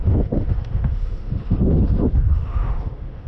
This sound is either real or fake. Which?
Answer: fake